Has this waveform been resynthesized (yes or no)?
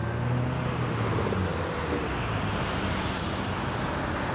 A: no